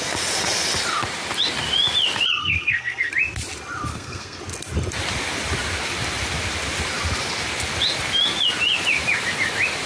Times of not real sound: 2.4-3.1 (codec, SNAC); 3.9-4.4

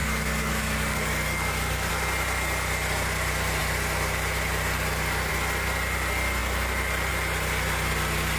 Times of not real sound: 0.0-1.9 (codec, DAC)

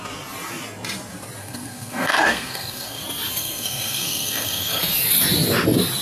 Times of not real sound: 1.4-3.0 (codec, SNAC); 3.4-4.8